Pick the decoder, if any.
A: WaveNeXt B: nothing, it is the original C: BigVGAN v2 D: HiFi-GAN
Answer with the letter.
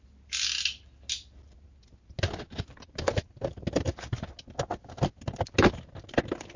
B